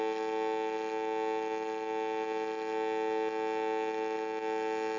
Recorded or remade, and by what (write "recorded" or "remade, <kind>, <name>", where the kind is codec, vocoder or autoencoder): recorded